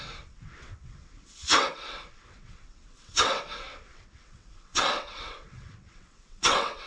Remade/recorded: remade